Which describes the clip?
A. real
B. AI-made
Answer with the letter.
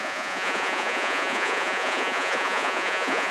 B